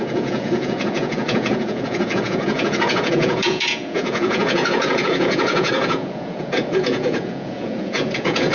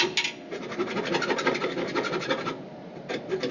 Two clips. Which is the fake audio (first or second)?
first